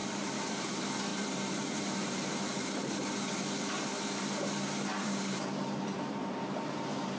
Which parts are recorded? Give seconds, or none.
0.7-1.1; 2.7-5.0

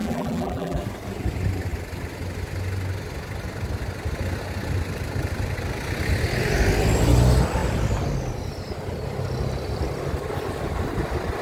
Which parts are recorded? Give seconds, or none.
0.8-11.4

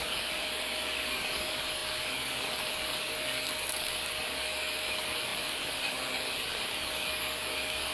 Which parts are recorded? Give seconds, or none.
none

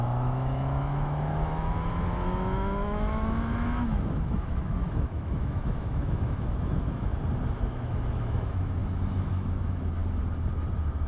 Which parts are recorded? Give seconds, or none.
7.1-7.6; 10.0-11.1

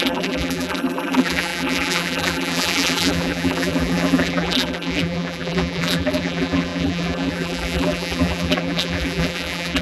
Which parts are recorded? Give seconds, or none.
none

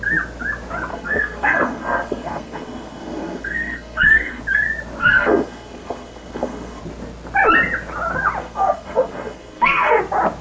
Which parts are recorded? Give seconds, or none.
0.0-0.9; 4.4-5.0; 6.8-8.4; 10.0-10.4